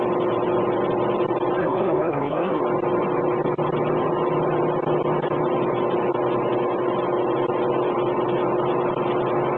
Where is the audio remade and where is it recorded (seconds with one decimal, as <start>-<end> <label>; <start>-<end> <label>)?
0.0-1.6 recorded; 1.6-2.6 remade; 2.6-9.6 recorded